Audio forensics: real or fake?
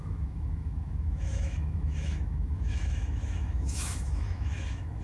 fake